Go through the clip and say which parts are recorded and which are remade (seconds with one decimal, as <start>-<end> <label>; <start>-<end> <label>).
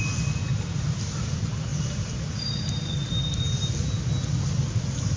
0.0-5.2 recorded